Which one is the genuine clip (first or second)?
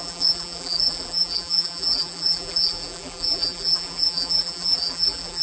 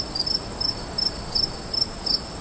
second